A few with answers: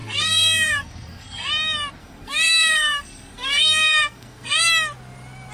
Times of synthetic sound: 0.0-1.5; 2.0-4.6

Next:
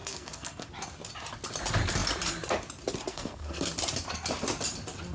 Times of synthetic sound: 0.0-0.7; 3.1-3.7

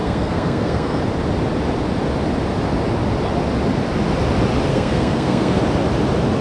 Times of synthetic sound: 0.0-1.0; 4.7-5.6